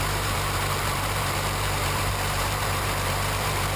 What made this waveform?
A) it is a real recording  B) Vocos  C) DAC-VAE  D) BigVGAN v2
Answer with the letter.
D